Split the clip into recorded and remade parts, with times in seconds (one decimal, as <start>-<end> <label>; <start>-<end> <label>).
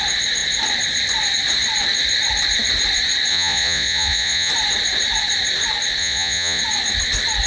0.0-3.3 recorded; 3.3-4.5 remade; 4.5-6.0 recorded; 6.0-6.6 remade; 6.6-7.5 recorded